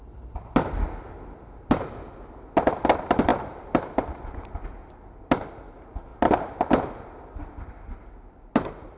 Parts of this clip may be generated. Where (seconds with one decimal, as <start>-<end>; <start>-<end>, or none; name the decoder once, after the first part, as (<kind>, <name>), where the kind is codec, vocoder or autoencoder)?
none